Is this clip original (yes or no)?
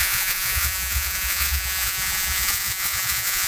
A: no